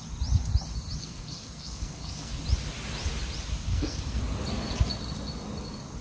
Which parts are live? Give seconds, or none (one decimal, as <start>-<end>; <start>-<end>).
0.0-1.0; 2.4-3.7; 4.2-6.0